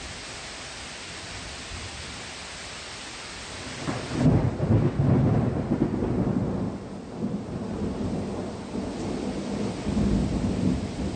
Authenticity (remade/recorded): recorded